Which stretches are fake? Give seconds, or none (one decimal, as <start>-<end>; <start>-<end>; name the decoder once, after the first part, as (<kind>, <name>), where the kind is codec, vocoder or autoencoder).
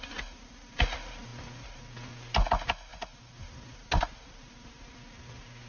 none